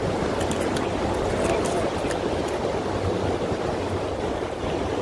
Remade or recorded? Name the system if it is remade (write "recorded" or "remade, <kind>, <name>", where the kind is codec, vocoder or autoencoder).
recorded